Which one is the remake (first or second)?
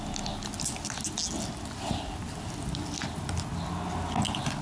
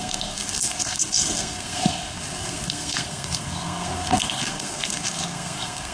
second